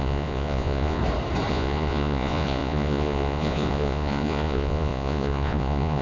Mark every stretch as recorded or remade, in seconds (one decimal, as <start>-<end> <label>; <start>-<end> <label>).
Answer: 0.0-1.0 remade; 1.0-1.5 recorded; 1.5-6.0 remade